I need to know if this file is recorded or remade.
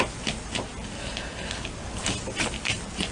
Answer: recorded